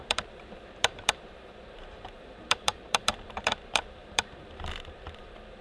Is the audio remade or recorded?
remade